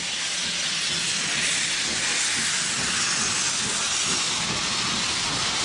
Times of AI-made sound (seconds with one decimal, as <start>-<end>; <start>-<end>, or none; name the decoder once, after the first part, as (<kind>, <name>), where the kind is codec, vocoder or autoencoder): none